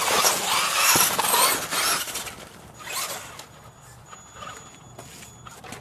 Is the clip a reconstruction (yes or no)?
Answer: no